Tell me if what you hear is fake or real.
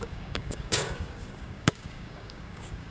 fake